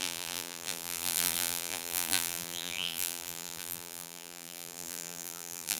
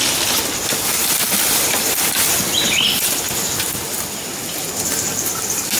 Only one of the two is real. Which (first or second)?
second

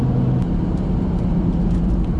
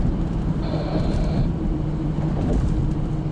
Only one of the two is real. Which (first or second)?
first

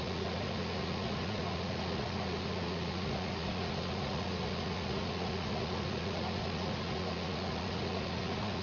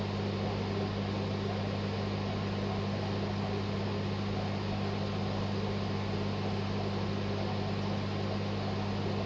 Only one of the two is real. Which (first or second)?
second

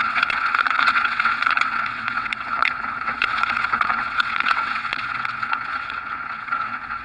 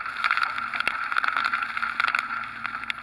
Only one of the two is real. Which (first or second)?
second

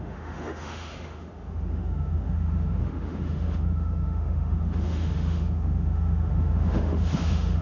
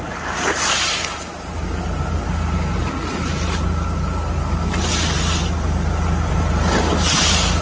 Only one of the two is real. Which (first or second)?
second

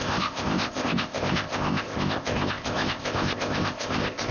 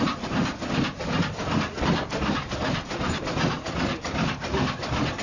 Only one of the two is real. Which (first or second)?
second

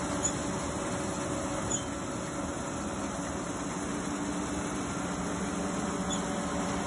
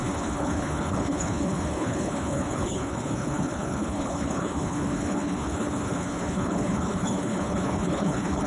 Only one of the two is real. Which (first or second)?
first